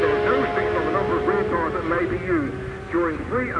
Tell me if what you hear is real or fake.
real